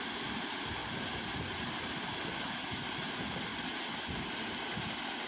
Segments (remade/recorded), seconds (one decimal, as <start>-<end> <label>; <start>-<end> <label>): 0.0-0.8 recorded; 0.8-1.7 remade; 1.7-3.5 recorded; 3.5-5.3 remade